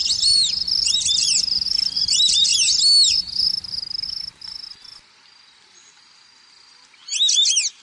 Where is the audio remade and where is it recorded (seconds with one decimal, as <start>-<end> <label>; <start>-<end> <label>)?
0.0-2.5 remade; 2.5-6.5 recorded; 6.5-7.0 remade; 7.0-7.8 recorded